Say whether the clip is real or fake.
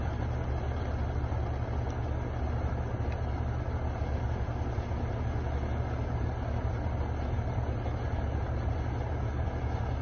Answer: real